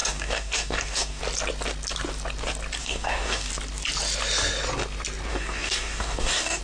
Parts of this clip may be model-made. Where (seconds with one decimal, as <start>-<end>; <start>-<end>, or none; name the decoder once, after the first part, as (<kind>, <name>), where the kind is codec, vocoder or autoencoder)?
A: 0.0-1.2 (codec, DAC); 2.8-3.5; 5.3-6.6